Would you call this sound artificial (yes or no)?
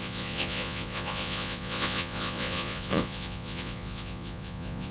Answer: yes